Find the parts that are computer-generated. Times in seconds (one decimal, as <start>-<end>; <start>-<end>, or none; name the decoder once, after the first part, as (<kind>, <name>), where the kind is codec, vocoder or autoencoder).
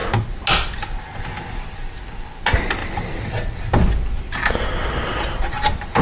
none